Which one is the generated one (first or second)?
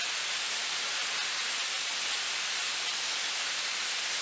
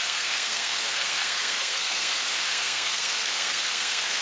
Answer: second